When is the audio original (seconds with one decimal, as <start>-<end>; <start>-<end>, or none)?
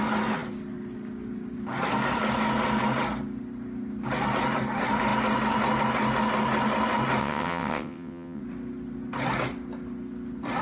0.0-7.2; 8.4-10.6